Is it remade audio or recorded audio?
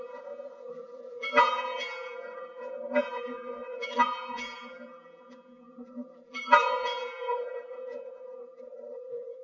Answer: remade